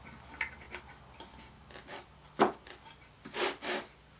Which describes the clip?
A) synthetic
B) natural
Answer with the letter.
B